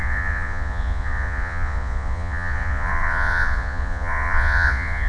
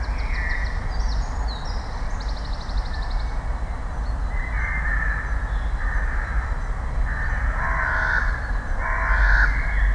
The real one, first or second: second